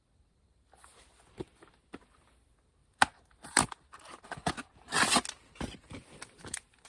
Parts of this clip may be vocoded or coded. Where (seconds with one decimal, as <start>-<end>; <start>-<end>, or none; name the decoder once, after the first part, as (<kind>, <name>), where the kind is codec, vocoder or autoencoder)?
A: 2.8-4.2 (vocoder, BigVGAN v2)